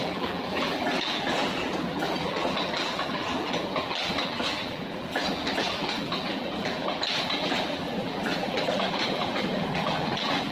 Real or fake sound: fake